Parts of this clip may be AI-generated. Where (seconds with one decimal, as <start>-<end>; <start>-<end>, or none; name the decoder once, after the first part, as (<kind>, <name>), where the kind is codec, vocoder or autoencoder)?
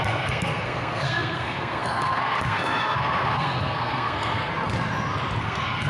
0.0-4.5 (codec, SNAC); 5.4-5.9